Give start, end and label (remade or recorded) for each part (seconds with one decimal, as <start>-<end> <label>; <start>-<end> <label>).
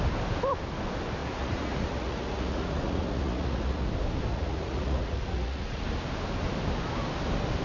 0.0-1.2 recorded; 1.2-3.9 remade; 3.9-4.3 recorded; 4.3-5.8 remade; 5.8-7.6 recorded